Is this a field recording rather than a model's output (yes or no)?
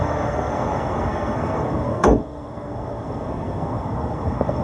no